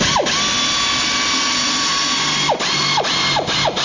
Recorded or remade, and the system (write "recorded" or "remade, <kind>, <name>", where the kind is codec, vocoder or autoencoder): recorded